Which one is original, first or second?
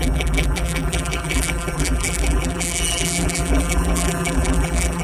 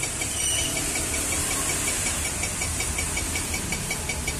second